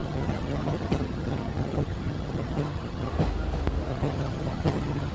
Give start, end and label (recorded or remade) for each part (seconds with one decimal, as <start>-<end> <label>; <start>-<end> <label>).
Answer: 0.0-3.1 remade; 3.1-3.9 recorded; 3.9-5.1 remade